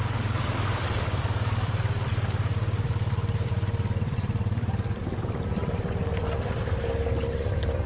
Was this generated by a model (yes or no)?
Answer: yes